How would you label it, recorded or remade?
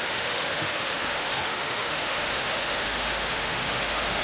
remade